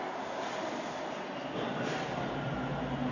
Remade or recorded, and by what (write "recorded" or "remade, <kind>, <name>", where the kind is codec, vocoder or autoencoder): recorded